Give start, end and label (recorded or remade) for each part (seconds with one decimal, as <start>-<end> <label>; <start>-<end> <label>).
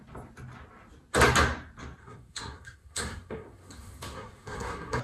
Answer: 0.0-2.0 recorded; 2.0-5.0 remade